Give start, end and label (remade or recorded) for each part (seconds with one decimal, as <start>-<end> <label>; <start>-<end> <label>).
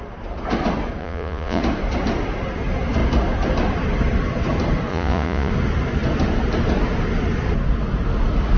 0.0-1.0 recorded; 1.0-1.6 remade; 1.6-4.9 recorded; 4.9-5.5 remade; 5.5-8.6 recorded